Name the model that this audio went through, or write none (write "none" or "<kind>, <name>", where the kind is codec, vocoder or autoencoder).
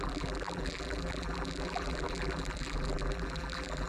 vocoder, BigVGAN v2